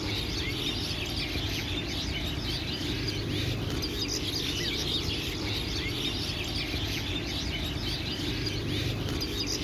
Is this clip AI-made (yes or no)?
no